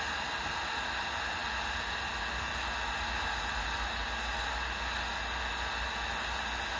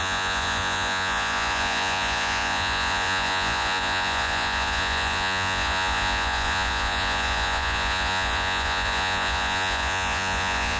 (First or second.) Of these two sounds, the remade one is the second